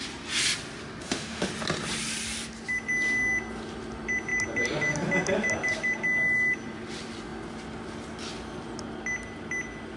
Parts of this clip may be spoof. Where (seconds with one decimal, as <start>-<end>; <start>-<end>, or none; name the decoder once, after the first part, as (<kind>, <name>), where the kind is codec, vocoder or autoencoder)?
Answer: 1.0-1.5 (autoencoder, DAC-VAE)